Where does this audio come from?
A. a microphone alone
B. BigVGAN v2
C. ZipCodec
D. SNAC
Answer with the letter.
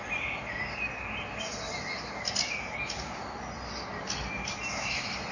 A